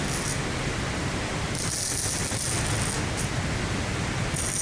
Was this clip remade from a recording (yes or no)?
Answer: no